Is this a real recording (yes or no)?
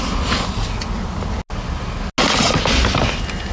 yes